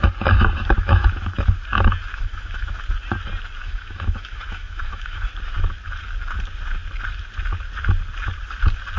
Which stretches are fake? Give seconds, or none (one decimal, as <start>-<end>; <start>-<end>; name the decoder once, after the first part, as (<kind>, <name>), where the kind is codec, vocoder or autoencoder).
0.8-1.5 (autoencoder, DAC-VAE); 2.1-2.8; 3.6-5.3